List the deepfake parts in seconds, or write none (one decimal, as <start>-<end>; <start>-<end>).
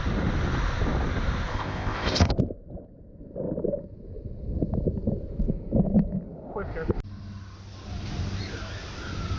1.5-2.3